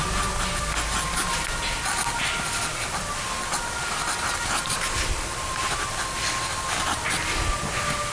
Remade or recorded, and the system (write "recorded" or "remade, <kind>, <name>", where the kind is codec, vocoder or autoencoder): recorded